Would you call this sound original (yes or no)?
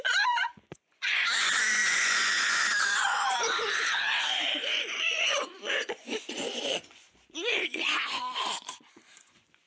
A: no